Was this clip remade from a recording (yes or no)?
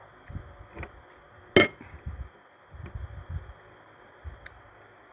no